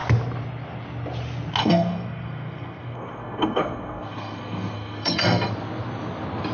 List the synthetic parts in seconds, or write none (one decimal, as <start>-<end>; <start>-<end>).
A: 1.6-5.5